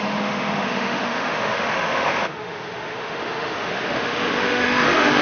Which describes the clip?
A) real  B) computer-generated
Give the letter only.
B